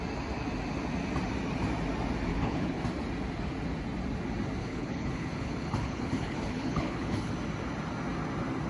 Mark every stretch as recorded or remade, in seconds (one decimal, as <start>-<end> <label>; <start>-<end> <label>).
0.0-2.3 recorded; 2.3-2.8 remade; 2.8-4.6 recorded; 4.6-7.3 remade; 7.3-8.7 recorded